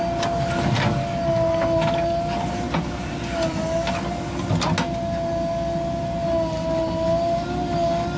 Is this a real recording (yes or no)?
yes